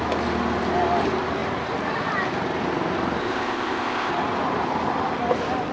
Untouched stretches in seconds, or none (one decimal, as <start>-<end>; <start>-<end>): 0.0-3.2; 4.1-5.7